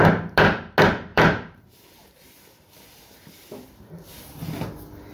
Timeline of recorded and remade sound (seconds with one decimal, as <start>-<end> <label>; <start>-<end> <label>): 0.0-1.1 recorded; 1.1-4.2 remade; 4.2-5.1 recorded